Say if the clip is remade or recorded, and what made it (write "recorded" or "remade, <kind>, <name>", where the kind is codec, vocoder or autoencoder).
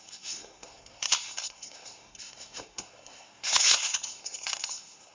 remade, codec, SNAC